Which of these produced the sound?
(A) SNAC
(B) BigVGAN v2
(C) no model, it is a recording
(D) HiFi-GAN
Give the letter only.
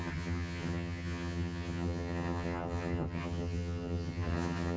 D